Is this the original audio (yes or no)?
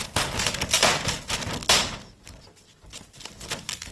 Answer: yes